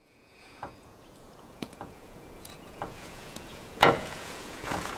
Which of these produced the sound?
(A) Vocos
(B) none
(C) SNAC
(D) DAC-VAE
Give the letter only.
A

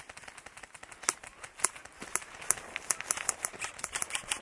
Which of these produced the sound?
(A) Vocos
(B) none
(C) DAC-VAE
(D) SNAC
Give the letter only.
B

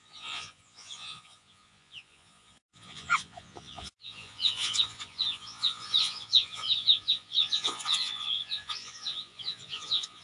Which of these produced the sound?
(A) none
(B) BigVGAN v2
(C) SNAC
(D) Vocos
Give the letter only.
D